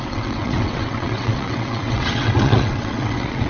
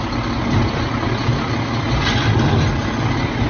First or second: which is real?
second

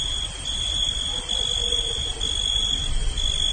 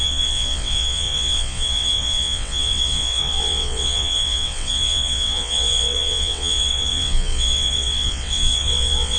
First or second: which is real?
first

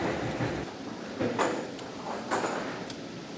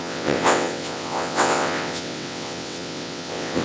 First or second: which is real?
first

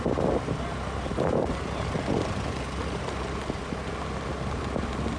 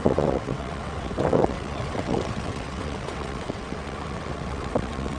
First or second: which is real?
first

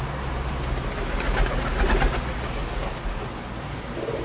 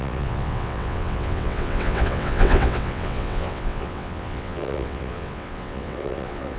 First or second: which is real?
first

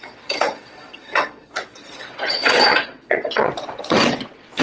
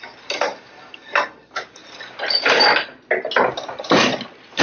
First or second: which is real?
second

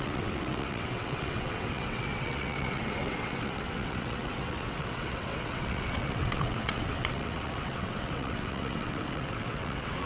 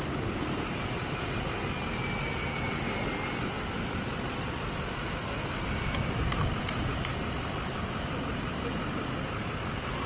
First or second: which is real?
second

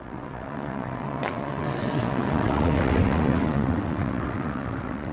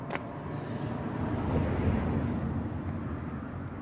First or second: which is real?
second